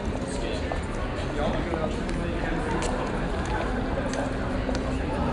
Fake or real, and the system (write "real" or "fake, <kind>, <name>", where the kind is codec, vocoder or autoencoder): real